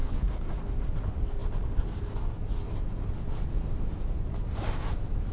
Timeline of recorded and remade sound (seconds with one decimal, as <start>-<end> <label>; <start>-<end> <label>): 0.0-0.6 remade; 0.6-5.3 recorded